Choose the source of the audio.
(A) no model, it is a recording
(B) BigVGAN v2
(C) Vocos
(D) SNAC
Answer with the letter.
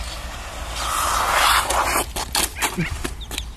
A